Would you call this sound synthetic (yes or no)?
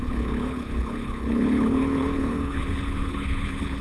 yes